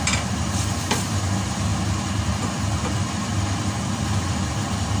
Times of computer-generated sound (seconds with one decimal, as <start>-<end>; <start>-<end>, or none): none